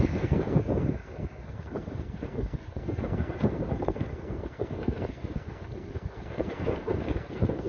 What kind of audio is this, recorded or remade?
remade